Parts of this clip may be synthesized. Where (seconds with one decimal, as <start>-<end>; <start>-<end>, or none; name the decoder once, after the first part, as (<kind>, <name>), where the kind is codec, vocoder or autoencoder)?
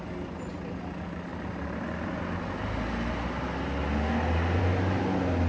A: none